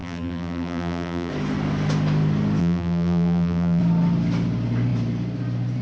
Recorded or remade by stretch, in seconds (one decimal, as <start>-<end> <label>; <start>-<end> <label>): 0.0-1.3 remade; 1.3-2.6 recorded; 2.6-3.8 remade; 3.8-5.8 recorded